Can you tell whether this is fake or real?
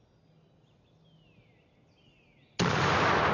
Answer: real